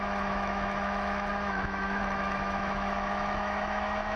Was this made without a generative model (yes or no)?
no